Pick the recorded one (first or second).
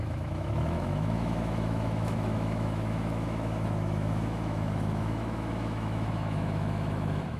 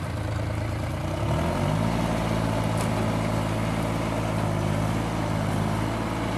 second